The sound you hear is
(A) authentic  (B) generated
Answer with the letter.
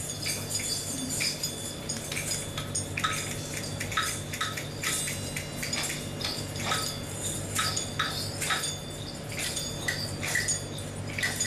A